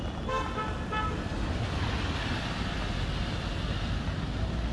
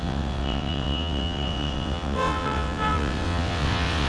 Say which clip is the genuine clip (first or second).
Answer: first